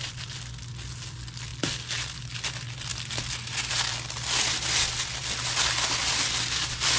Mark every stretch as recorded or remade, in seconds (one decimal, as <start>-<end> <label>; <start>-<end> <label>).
0.0-7.0 recorded